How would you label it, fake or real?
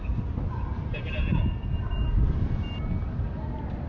real